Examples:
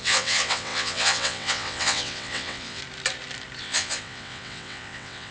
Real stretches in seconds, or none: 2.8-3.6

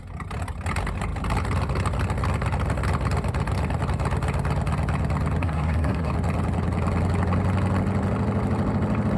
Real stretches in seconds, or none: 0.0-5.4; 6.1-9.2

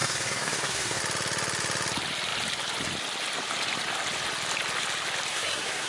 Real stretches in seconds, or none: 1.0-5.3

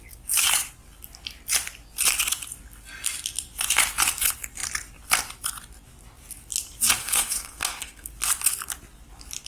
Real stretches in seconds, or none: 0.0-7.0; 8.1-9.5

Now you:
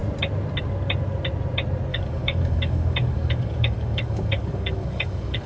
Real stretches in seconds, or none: 0.0-1.9

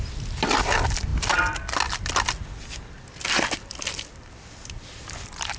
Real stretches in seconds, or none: 0.0-5.6